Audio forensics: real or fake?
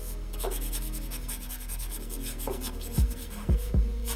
fake